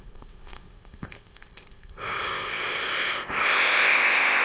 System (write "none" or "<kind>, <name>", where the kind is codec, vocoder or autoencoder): codec, ZipCodec